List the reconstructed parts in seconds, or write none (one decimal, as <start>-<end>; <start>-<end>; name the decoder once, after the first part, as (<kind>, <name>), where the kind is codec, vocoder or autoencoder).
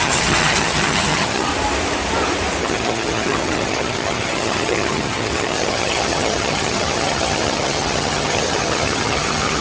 0.0-1.5 (vocoder, HiFi-GAN); 2.6-9.6